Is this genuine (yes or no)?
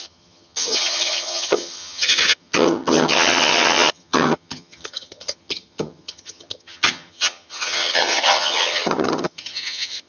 no